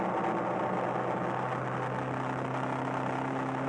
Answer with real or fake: real